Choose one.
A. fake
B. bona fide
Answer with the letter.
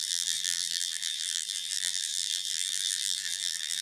A